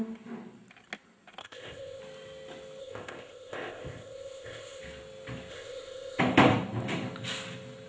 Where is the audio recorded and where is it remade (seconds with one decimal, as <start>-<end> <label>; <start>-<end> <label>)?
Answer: 0.0-1.4 recorded; 1.4-2.0 remade; 2.0-2.8 recorded; 2.8-4.8 remade; 4.8-5.5 recorded; 5.5-6.2 remade; 6.2-7.9 recorded